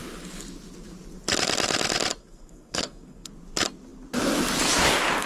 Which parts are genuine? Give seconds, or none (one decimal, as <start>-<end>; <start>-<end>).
0.0-2.2; 3.3-5.3